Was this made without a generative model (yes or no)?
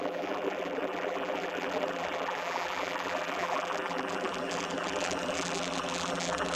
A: no